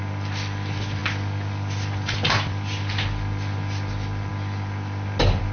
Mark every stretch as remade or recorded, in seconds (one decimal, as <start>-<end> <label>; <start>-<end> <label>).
0.0-5.5 recorded